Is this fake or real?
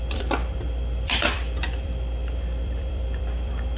fake